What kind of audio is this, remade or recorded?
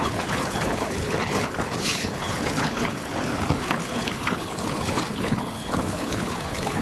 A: remade